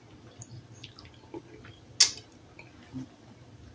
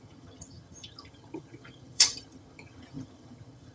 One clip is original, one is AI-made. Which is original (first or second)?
first